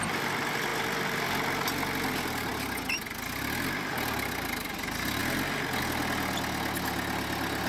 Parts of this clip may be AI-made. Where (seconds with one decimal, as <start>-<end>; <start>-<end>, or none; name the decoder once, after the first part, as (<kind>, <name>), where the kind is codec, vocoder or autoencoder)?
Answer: none